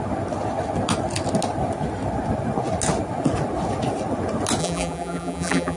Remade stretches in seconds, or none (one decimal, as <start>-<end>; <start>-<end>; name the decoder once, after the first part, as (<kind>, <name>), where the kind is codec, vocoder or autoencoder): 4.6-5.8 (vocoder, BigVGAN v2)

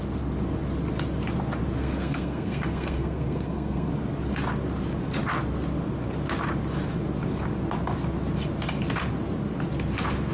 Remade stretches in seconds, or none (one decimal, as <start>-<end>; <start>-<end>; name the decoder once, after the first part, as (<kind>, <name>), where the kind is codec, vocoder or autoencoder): 1.8-3.9 (codec, SNAC)

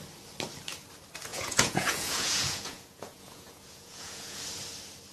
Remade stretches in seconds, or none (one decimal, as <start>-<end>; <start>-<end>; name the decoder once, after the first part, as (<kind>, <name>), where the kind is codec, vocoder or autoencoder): 1.3-4.4 (vocoder, Vocos)

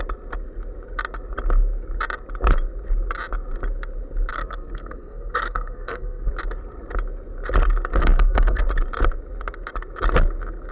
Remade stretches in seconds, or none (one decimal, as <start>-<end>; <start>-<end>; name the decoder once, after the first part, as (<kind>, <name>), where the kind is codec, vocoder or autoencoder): 4.3-6.3 (codec, SNAC); 8.0-8.6

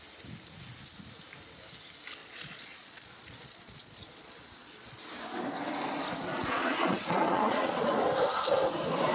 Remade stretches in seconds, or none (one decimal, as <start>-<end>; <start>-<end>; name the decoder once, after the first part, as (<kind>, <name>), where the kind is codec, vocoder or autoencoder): 2.2-5.0 (vocoder, Vocos); 6.3-7.9

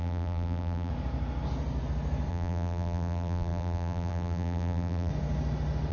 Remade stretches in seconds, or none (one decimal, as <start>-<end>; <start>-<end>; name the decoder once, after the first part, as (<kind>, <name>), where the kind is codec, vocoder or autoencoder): 0.0-0.9 (vocoder, BigVGAN v2); 2.3-5.1

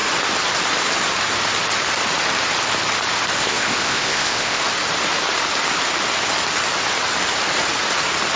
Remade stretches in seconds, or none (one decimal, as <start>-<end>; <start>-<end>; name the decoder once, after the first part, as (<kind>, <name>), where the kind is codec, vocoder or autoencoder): 3.4-4.6 (codec, ZipCodec)